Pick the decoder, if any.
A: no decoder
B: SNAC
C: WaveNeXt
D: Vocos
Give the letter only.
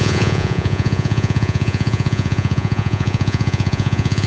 D